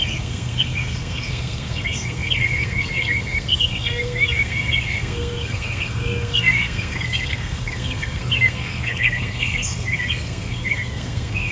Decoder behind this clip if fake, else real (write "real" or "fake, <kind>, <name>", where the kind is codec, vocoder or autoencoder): fake, codec, SNAC